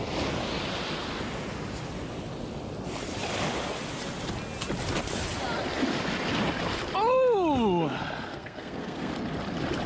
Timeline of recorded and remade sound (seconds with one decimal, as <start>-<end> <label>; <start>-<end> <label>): 0.0-8.3 recorded; 8.3-9.1 remade; 9.1-9.9 recorded

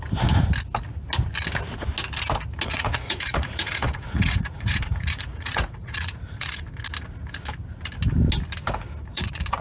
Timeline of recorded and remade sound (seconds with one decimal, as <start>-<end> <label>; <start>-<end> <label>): 0.0-2.7 recorded; 2.7-6.6 remade; 6.6-9.1 recorded; 9.1-9.6 remade

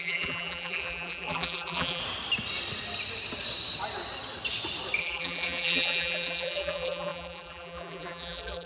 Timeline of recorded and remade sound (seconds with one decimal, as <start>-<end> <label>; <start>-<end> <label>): 0.0-2.0 remade; 2.0-5.0 recorded; 5.0-8.7 remade

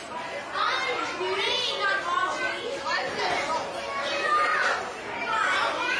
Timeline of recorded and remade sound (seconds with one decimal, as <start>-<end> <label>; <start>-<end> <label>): 0.0-6.0 recorded

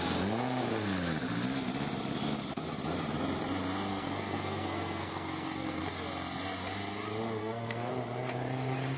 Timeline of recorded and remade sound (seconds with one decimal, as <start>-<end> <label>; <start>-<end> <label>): 0.0-3.9 recorded; 3.9-5.8 remade; 5.8-7.4 recorded; 7.4-7.9 remade; 7.9-9.0 recorded

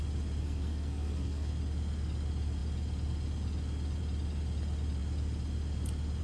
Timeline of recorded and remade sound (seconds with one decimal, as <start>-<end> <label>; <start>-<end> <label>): 0.0-0.4 recorded; 0.4-1.5 remade; 1.5-6.2 recorded